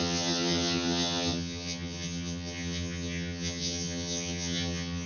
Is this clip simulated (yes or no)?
yes